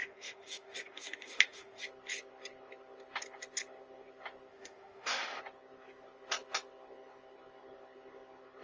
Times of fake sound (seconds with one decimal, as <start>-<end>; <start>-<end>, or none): 0.0-1.8; 4.5-5.4